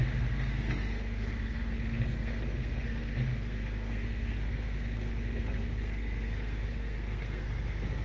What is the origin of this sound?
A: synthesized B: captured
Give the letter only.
A